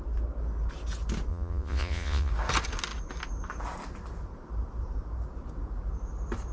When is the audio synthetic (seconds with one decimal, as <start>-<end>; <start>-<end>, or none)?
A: 1.3-2.3